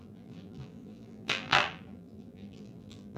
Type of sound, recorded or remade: remade